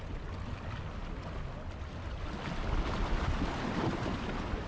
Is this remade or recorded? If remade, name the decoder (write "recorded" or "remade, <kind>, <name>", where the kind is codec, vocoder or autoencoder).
recorded